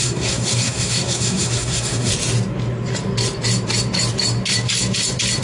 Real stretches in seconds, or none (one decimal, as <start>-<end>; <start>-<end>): 2.1-5.4